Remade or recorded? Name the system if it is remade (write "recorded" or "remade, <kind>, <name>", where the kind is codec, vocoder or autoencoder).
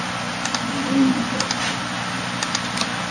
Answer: recorded